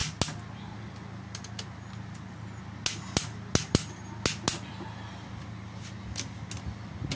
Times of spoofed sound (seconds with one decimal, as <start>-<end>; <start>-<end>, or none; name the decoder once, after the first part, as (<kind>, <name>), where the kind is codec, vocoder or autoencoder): none